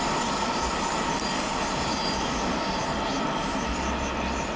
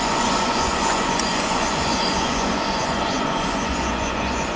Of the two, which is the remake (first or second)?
second